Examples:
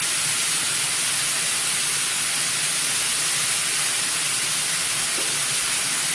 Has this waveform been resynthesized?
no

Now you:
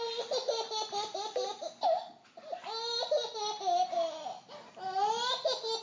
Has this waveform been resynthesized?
no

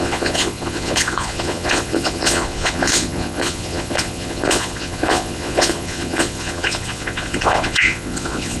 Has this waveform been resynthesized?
yes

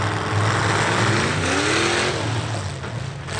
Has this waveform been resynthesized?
no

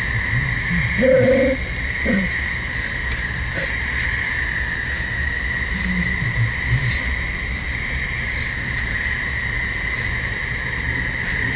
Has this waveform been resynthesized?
no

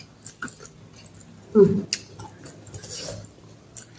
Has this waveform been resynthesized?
no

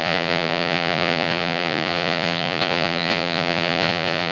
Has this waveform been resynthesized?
yes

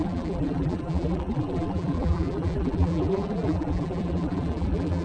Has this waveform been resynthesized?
yes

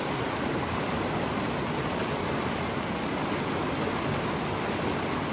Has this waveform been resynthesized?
no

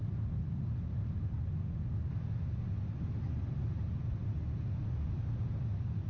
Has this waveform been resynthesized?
no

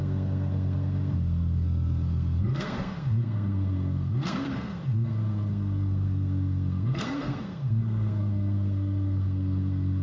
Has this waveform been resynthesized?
yes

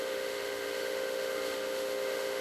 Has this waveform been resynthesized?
yes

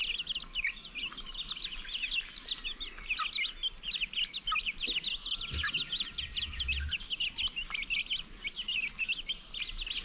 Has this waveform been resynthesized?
no